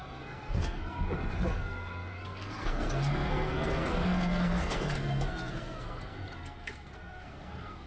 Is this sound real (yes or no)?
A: no